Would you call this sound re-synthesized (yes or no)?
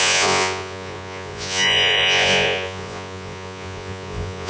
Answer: yes